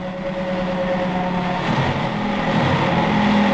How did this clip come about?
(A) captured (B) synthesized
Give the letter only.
A